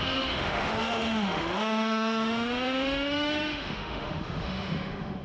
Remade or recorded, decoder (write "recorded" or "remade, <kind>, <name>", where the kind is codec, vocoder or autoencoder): remade, autoencoder, DAC-VAE